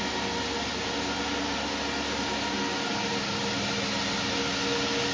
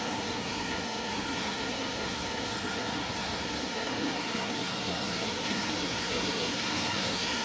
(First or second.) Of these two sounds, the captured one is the first